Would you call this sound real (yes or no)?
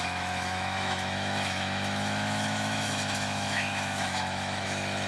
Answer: no